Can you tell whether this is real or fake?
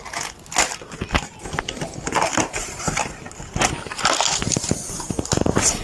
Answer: real